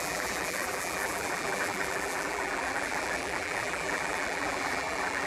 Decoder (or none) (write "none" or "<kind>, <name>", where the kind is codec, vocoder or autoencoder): vocoder, BigVGAN v2